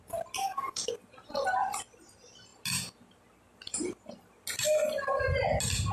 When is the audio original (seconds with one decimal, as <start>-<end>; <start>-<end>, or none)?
0.0-0.4; 0.9-5.9